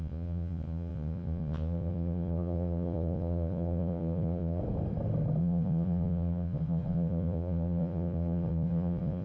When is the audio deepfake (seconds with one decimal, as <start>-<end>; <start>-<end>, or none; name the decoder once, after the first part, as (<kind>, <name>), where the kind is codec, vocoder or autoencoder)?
0.0-4.6 (vocoder, Vocos); 5.4-9.2

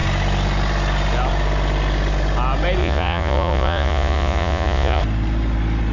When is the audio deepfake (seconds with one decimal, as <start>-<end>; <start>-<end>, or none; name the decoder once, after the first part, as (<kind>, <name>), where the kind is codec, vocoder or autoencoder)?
2.8-5.0 (vocoder, Vocos)

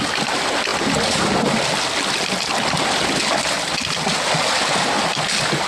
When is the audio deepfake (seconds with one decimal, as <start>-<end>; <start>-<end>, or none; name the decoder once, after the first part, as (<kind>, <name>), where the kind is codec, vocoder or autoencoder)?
none

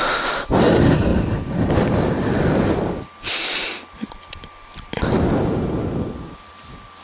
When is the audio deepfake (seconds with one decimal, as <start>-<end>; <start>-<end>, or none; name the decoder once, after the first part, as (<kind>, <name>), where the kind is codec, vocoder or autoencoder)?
none

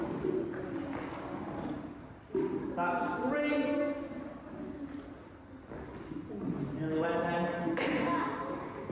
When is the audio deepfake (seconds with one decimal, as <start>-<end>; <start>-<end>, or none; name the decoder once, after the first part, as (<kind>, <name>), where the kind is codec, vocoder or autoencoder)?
none

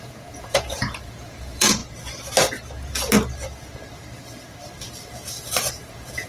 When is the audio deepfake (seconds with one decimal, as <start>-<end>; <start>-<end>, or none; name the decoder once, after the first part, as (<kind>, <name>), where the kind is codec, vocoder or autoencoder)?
0.0-1.8 (vocoder, Vocos); 5.1-6.3

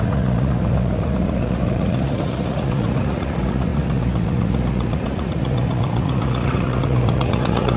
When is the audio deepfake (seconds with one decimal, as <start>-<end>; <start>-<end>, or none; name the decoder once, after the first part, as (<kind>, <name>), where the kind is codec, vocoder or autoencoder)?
0.0-7.8 (vocoder, Vocos)

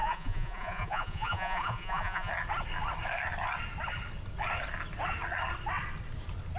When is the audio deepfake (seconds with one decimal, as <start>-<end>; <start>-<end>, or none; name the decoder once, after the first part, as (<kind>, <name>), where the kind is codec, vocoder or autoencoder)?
0.0-2.3 (vocoder, Vocos)